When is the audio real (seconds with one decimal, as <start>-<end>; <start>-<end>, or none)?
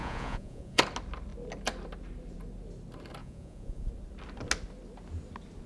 0.8-3.2; 3.9-5.7